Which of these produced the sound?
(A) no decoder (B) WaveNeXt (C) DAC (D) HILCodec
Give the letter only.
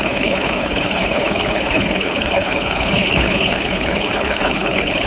D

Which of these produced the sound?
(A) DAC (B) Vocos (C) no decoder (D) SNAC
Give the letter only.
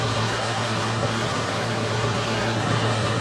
D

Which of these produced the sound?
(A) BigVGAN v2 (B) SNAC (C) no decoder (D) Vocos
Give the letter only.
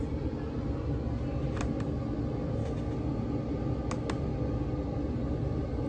C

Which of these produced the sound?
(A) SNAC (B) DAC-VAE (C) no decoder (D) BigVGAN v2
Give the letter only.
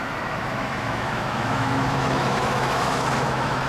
B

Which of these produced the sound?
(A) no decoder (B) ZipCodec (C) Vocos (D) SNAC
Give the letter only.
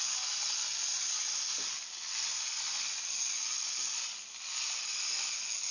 A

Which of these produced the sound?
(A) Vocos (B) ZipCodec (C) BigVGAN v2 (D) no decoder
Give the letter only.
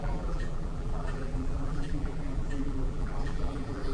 C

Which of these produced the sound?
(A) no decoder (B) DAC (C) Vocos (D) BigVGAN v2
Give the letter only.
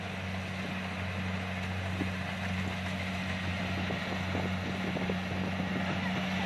A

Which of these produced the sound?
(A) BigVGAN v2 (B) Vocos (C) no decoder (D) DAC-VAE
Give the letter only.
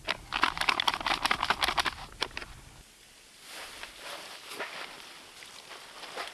C